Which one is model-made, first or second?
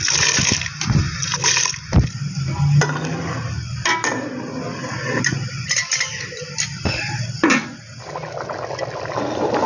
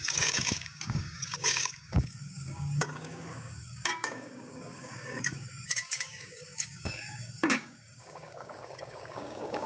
second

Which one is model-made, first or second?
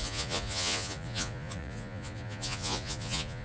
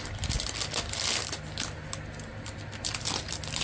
first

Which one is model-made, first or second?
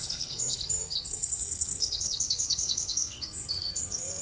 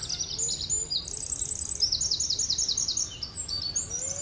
first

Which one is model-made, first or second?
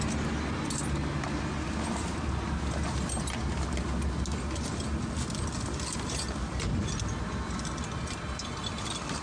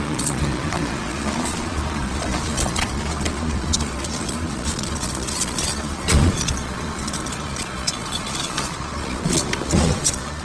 second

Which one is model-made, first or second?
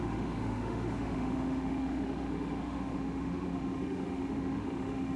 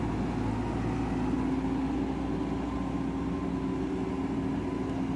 first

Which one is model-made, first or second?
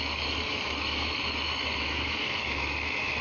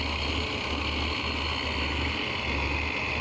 first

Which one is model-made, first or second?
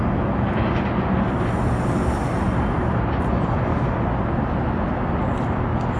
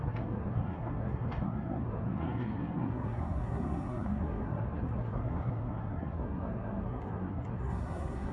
second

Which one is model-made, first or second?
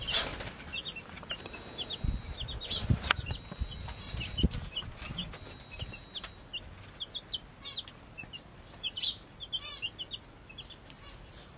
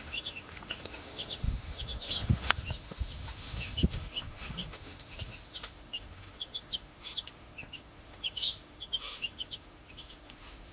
second